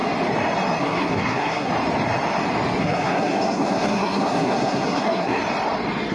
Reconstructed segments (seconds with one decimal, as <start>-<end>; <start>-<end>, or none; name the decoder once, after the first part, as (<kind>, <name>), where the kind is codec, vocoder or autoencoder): 0.8-1.7 (codec, SNAC); 2.8-5.4